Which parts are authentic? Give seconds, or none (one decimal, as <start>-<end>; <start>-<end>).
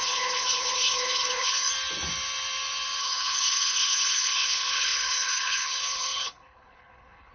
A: 1.7-3.0